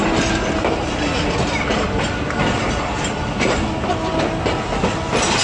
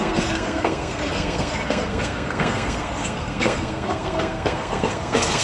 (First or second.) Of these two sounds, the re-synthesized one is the second